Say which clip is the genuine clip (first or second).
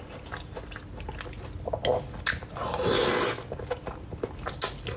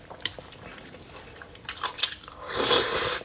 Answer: first